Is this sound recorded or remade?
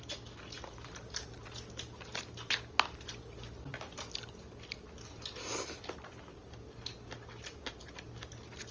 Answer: recorded